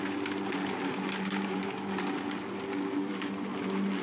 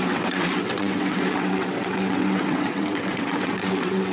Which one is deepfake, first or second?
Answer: second